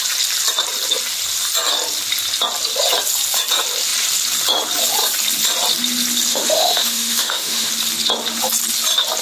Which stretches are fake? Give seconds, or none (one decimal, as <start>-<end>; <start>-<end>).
6.3-7.7